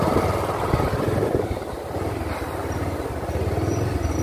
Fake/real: real